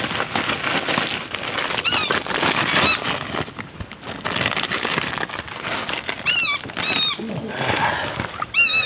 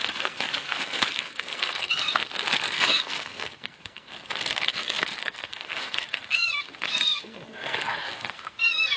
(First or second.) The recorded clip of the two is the first